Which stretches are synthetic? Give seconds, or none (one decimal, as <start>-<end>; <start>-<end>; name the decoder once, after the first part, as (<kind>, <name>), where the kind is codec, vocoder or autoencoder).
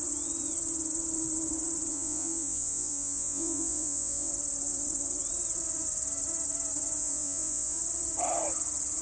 1.9-4.3 (vocoder, Vocos); 7.0-7.8